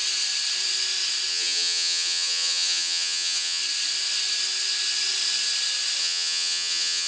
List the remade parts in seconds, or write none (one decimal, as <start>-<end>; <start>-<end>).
1.3-3.6; 6.0-7.1